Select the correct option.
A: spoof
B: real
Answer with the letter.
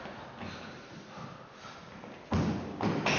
B